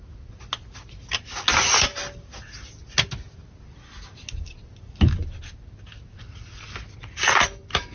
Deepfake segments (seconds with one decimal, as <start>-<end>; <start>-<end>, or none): none